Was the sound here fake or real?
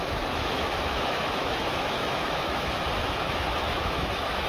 fake